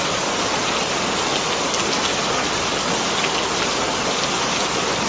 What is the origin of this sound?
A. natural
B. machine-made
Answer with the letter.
A